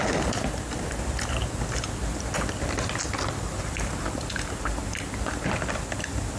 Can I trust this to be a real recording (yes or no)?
yes